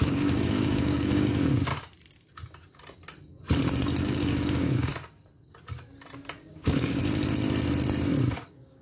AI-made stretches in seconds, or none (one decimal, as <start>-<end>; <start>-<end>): 0.0-1.7; 4.0-4.9; 6.5-7.0; 8.3-8.8